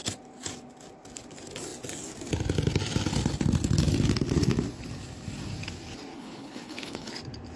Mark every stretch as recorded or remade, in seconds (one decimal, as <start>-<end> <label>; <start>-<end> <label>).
0.0-6.1 recorded; 6.1-7.1 remade; 7.1-7.6 recorded